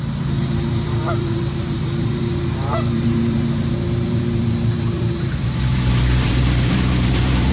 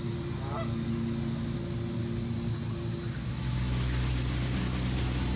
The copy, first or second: first